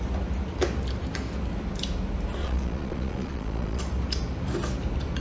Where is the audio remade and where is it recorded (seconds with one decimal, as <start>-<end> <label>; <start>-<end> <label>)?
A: 0.0-2.4 recorded; 2.4-3.8 remade; 3.8-5.2 recorded